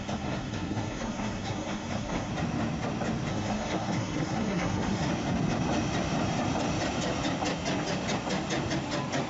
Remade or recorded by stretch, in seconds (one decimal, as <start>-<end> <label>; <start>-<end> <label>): 0.0-2.3 remade; 2.3-3.3 recorded; 3.3-5.1 remade; 5.1-9.3 recorded